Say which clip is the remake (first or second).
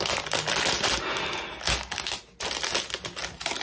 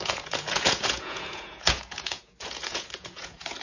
second